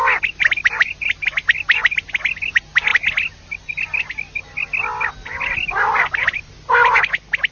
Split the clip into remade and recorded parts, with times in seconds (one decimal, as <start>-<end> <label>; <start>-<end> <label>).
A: 0.0-7.5 recorded